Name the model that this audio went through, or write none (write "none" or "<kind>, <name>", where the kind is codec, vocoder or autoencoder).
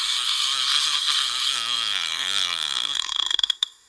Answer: codec, SNAC